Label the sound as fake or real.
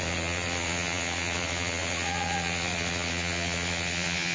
fake